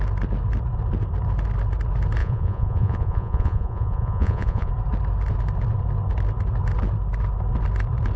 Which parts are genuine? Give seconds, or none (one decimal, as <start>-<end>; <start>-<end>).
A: 0.0-2.2; 4.7-8.2